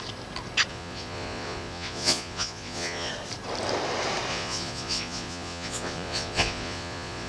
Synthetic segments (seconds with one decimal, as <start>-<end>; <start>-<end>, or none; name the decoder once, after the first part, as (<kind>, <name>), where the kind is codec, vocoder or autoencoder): 0.7-3.1 (vocoder, Vocos); 4.3-7.3